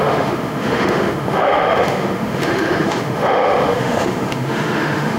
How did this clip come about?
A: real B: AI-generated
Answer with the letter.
B